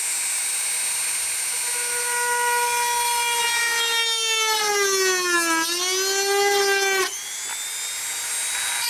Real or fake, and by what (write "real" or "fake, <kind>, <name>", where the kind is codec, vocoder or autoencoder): real